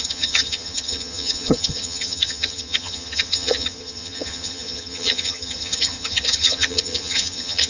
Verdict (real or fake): fake